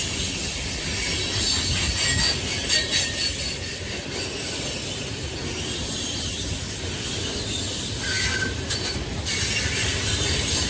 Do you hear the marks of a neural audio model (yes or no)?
no